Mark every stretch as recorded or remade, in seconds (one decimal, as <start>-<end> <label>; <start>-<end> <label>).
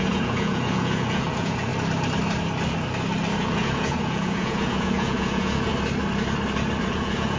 0.0-1.7 remade; 1.7-3.4 recorded; 3.4-5.7 remade; 5.7-6.8 recorded; 6.8-7.4 remade